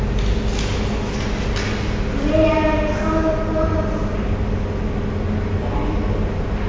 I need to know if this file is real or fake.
real